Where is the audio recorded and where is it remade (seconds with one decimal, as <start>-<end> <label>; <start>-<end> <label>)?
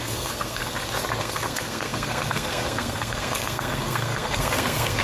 0.0-0.6 remade; 0.6-1.2 recorded; 1.2-5.0 remade